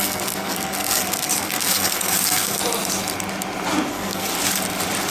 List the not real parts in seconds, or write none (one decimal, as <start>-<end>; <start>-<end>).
0.0-2.6; 3.9-4.3